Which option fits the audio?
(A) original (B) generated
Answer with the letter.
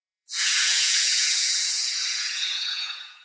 B